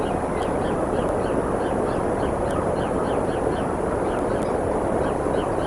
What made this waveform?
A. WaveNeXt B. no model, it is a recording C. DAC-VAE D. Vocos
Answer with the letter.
B